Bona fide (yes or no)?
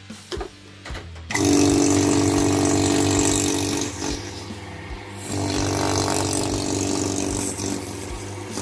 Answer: yes